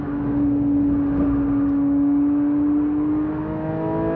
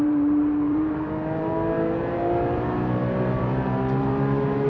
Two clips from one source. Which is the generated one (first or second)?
second